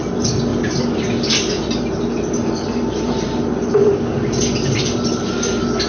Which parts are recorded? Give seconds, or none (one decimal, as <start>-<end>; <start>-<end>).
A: 0.0-5.9

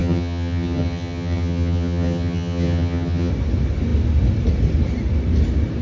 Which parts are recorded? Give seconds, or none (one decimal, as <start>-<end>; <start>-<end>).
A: 3.3-5.8

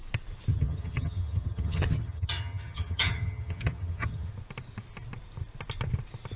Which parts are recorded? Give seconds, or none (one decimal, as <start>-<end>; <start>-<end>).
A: 0.0-0.5; 4.3-6.4

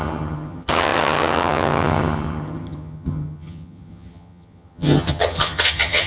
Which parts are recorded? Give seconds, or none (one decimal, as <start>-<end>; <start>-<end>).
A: none

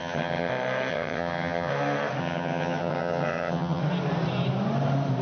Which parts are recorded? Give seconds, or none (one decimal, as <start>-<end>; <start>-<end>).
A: 0.5-0.9; 1.7-2.2; 3.8-5.2

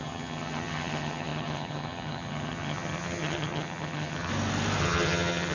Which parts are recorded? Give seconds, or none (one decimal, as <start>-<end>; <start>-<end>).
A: 4.3-4.8